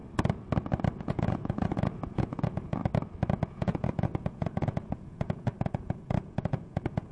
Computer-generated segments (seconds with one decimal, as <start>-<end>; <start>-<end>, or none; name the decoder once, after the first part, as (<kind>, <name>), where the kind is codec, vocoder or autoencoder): 1.0-2.8 (vocoder, Vocos); 3.5-7.1